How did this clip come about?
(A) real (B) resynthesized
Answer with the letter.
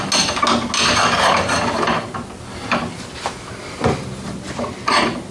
A